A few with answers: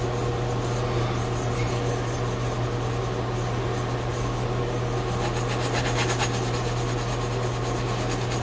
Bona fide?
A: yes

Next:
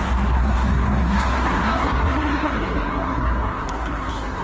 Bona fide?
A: no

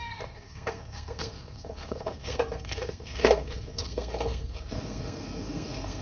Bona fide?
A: no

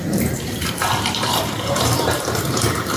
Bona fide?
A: no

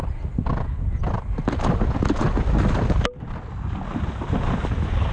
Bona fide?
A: yes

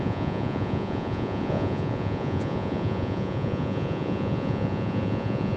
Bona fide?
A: no